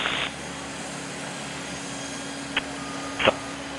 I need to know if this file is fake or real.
real